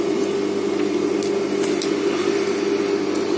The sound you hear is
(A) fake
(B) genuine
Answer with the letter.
B